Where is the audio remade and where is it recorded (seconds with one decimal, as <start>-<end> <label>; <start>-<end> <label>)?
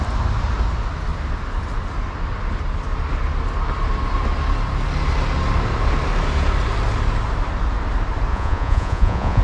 0.0-8.3 recorded; 8.3-9.4 remade